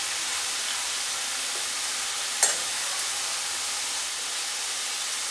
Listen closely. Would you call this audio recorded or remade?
recorded